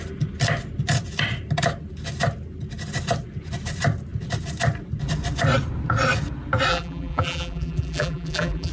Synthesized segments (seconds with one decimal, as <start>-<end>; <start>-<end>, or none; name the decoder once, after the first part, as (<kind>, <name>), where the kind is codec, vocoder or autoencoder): 6.7-8.7 (vocoder, BigVGAN v2)